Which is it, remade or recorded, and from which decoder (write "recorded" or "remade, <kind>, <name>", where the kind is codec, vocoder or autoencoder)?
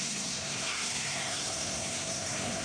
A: remade, codec, SNAC